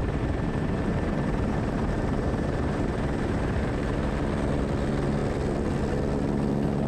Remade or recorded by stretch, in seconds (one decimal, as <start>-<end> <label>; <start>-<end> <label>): 0.0-4.1 remade; 4.1-6.9 recorded

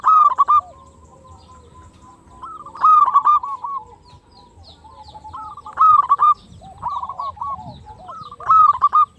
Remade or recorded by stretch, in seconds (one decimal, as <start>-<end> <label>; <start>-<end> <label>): 0.0-6.2 recorded; 6.2-6.8 remade; 6.8-9.2 recorded